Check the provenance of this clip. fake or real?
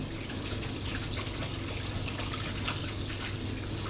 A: real